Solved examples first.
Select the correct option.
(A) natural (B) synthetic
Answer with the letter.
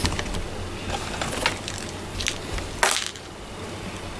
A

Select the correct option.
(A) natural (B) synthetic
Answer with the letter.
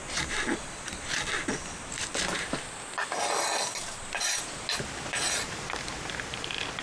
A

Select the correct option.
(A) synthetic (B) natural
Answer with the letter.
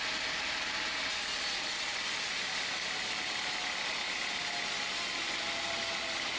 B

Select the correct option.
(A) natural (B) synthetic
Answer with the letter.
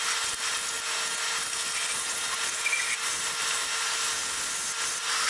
A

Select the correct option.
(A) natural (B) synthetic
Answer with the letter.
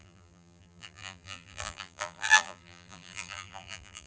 B